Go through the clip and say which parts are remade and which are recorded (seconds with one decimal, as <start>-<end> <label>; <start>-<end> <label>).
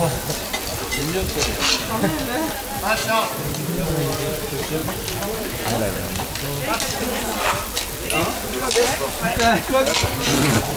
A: 0.0-3.0 recorded; 3.0-3.9 remade; 3.9-10.8 recorded